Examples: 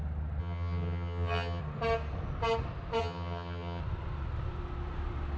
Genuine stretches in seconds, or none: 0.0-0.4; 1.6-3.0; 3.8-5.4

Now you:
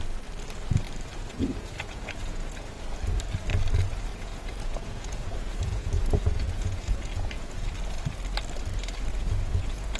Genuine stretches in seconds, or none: 0.0-1.2; 2.7-4.1; 7.7-9.1